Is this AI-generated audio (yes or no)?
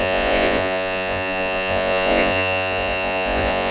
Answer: yes